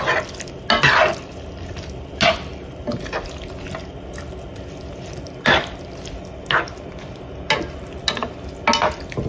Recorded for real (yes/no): yes